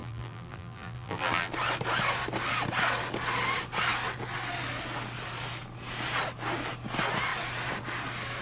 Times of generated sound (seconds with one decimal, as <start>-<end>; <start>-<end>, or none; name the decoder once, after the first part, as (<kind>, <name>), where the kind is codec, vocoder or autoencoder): 0.0-1.5 (vocoder, BigVGAN v2)